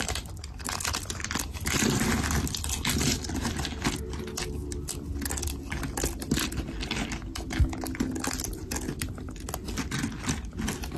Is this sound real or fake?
real